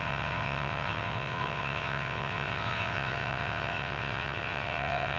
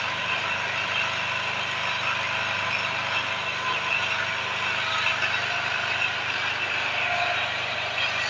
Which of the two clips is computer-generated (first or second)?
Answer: first